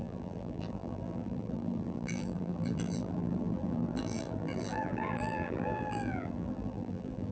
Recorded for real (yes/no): no